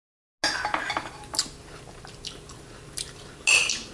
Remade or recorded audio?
recorded